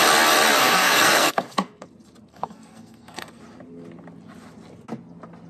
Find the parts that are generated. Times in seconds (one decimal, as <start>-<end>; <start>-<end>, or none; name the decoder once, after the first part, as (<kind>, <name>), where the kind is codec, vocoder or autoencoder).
0.6-1.9 (codec, SNAC); 2.3-3.4

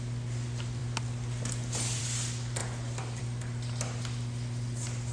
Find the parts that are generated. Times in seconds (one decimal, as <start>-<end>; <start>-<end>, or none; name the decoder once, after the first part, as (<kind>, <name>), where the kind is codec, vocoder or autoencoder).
none

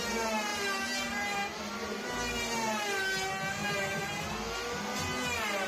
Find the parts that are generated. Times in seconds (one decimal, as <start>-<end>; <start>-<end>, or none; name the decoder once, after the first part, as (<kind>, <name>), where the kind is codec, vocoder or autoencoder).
0.5-1.6 (vocoder, BigVGAN v2); 3.6-4.2